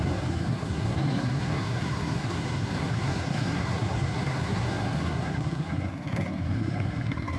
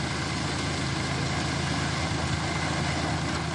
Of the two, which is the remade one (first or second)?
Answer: first